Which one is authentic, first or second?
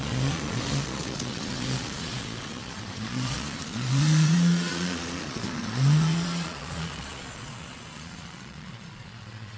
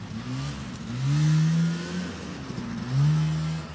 second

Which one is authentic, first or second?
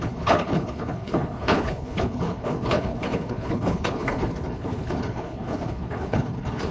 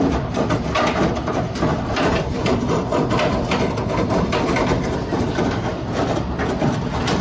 second